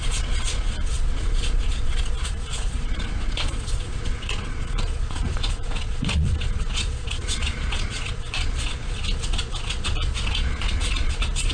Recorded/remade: remade